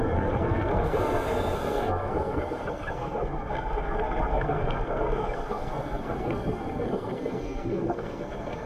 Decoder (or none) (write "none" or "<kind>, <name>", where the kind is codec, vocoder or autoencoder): codec, SNAC